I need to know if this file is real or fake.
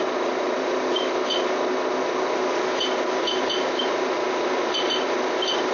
real